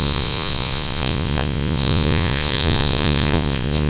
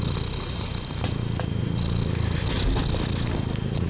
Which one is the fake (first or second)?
first